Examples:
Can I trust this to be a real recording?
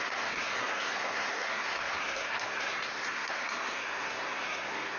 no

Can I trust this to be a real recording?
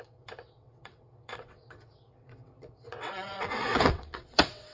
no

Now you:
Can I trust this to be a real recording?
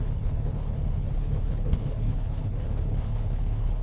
no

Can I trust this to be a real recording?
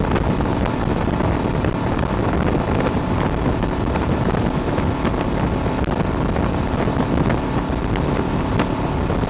yes